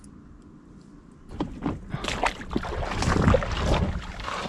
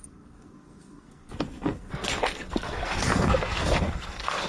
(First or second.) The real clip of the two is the first